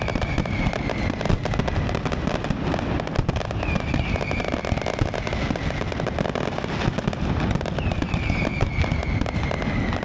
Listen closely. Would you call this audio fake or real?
real